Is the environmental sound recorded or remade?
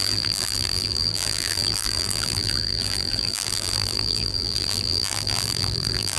remade